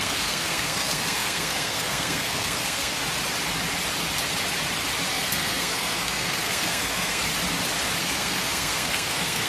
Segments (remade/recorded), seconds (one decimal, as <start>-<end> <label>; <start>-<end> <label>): 0.0-3.0 remade; 3.0-5.1 recorded; 5.1-7.3 remade; 7.3-8.0 recorded; 8.0-9.5 remade